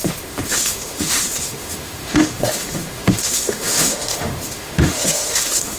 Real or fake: fake